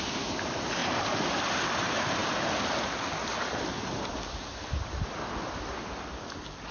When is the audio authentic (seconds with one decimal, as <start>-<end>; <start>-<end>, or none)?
0.0-6.7